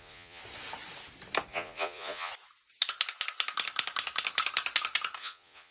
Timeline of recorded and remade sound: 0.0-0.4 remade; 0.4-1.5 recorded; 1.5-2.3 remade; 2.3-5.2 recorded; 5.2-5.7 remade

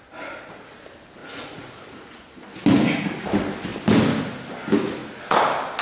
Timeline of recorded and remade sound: 0.0-1.2 recorded; 1.2-2.4 remade; 2.4-5.8 recorded

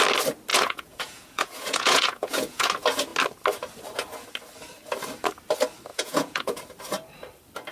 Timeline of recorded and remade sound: 0.0-0.5 recorded; 0.5-2.7 remade; 2.7-5.9 recorded; 5.9-6.6 remade; 6.6-7.7 recorded

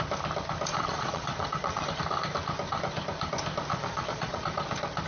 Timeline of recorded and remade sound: 0.0-0.7 recorded; 0.7-2.0 remade; 2.0-3.7 recorded; 3.7-4.4 remade; 4.4-5.1 recorded

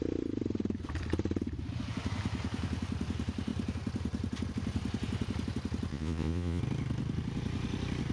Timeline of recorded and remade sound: 0.0-5.9 recorded; 5.9-6.6 remade; 6.6-8.1 recorded

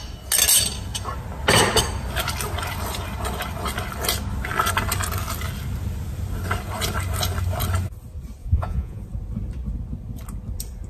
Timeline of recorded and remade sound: 0.0-8.4 recorded; 8.4-9.0 remade; 9.0-10.9 recorded